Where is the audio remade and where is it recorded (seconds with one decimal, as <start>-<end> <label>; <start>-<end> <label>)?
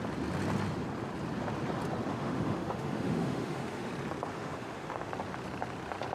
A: 0.0-2.1 recorded; 2.1-3.9 remade; 3.9-4.3 recorded; 4.3-5.1 remade; 5.1-6.1 recorded